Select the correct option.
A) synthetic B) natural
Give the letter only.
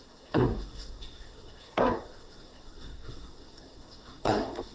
A